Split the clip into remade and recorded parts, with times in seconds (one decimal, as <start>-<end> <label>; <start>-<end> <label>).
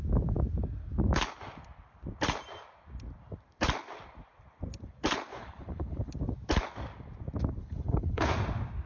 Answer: 0.0-5.3 recorded; 5.3-6.1 remade; 6.1-7.6 recorded; 7.6-8.2 remade; 8.2-8.9 recorded